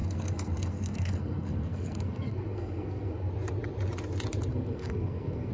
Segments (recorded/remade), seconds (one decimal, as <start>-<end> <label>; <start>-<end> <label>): 0.0-3.3 remade; 3.3-4.5 recorded; 4.5-5.5 remade